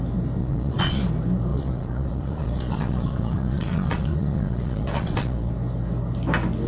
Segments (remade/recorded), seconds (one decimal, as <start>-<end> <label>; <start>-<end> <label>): 0.0-0.4 recorded; 0.4-1.0 remade; 1.0-1.5 recorded; 1.5-5.5 remade; 5.5-6.7 recorded